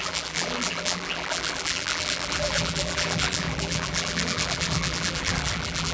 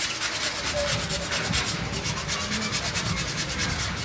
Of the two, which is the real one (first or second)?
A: second